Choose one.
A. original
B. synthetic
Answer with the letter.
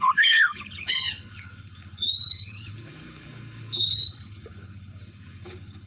B